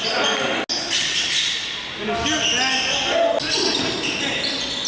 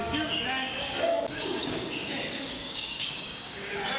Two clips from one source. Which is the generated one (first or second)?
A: second